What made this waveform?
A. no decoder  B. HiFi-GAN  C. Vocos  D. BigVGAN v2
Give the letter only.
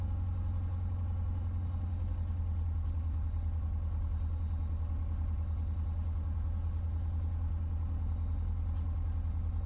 A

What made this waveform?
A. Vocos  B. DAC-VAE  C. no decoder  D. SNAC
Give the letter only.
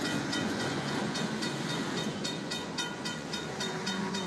A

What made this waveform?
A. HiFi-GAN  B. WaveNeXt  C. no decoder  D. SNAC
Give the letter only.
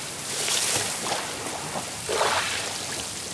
C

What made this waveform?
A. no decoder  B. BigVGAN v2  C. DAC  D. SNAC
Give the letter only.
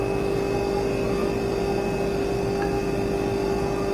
A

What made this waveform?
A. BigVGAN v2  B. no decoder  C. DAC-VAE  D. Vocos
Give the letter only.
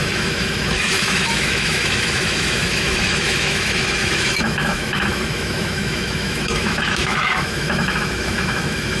C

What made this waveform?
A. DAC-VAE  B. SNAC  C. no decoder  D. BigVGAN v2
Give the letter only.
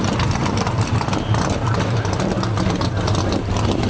D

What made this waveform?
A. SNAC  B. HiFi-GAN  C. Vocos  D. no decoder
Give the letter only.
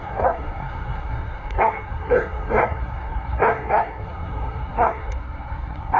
A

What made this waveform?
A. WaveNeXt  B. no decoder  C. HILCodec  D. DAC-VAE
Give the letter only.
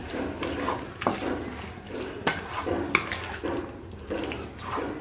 B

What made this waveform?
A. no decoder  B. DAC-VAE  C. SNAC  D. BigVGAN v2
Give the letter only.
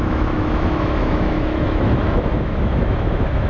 B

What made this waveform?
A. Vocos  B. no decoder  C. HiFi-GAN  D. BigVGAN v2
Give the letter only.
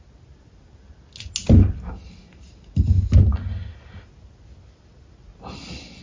B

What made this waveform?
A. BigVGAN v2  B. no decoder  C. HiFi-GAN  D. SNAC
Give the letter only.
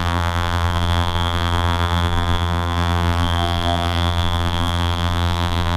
A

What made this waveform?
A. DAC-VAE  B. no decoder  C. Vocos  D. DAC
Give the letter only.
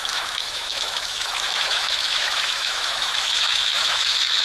A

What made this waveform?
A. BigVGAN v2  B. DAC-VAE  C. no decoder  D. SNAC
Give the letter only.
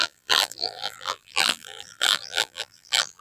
A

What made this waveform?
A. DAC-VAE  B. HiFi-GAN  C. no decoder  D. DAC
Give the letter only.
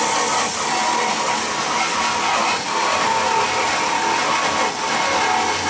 C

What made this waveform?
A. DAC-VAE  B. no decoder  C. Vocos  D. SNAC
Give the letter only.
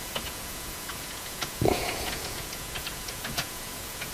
C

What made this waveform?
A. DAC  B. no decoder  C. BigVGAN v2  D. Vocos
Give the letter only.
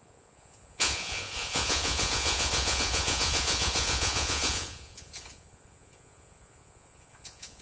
D